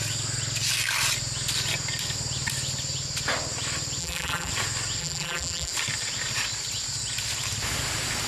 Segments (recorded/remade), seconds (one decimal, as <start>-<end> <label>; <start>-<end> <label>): 0.0-4.0 recorded; 4.0-4.5 remade; 4.5-5.0 recorded; 5.0-5.7 remade; 5.7-8.3 recorded